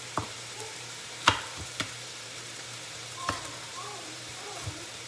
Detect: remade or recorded remade